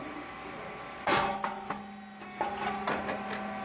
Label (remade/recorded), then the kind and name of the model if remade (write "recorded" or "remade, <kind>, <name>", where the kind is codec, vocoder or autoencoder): recorded